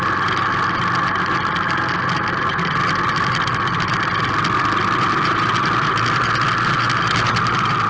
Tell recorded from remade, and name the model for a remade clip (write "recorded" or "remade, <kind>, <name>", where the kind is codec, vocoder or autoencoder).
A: recorded